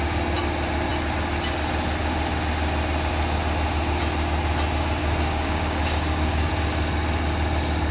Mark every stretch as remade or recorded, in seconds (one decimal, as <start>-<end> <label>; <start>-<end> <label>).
0.0-5.0 recorded; 5.0-6.5 remade; 6.5-7.9 recorded